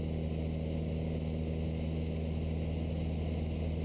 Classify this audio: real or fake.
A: real